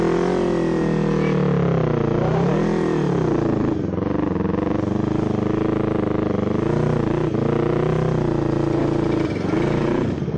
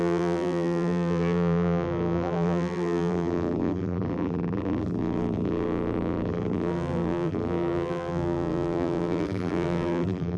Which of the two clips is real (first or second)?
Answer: first